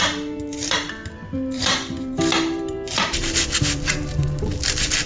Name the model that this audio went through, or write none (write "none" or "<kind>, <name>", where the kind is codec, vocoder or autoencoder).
vocoder, BigVGAN v2